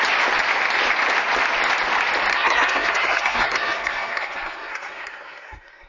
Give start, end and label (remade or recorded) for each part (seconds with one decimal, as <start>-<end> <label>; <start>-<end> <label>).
0.0-2.3 recorded; 2.3-5.9 remade

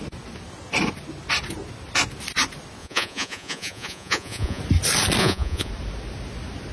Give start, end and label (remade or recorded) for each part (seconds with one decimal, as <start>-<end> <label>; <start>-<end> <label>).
0.0-2.8 recorded; 2.8-4.6 remade; 4.6-5.2 recorded; 5.2-5.7 remade; 5.7-6.7 recorded

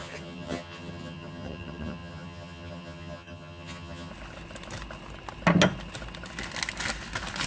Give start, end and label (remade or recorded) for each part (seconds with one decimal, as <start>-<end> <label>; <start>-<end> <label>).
0.0-4.1 remade; 4.1-7.5 recorded

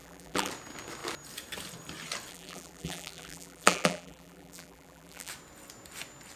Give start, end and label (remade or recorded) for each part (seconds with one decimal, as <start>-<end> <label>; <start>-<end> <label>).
0.0-0.5 remade; 0.5-2.3 recorded; 2.3-5.3 remade; 5.3-6.4 recorded

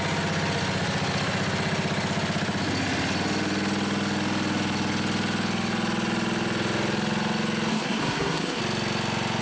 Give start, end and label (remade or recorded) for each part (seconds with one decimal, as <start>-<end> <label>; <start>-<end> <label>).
0.0-7.7 recorded; 7.7-8.6 remade; 8.6-9.4 recorded

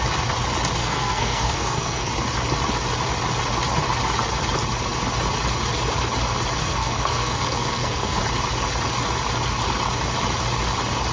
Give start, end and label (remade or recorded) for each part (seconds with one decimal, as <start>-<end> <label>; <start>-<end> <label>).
0.0-0.8 recorded; 0.8-2.1 remade; 2.1-6.6 recorded; 6.6-8.2 remade; 8.2-11.1 recorded